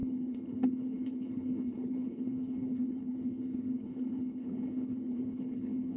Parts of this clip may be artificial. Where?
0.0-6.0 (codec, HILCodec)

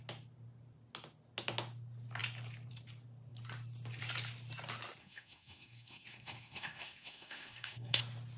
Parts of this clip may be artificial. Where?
5.0-8.0 (codec, SNAC)

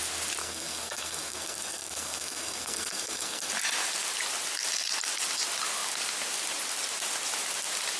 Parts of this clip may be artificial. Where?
0.4-3.5 (codec, SNAC)